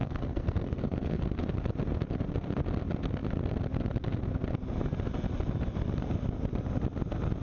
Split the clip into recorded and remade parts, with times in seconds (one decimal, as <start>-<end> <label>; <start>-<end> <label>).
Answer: 0.0-1.2 remade; 1.2-7.4 recorded